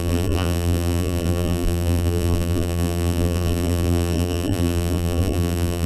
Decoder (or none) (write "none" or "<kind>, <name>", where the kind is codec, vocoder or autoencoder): vocoder, BigVGAN v2